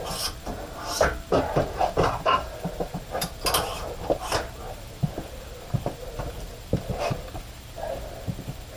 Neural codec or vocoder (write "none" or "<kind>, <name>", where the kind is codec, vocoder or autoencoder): none